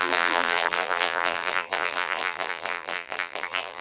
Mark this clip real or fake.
fake